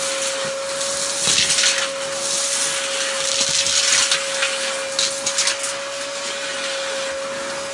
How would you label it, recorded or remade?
recorded